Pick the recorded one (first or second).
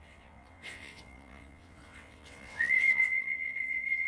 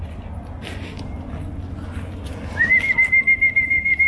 second